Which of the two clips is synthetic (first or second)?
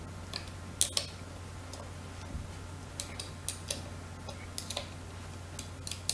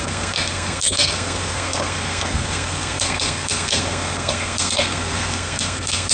second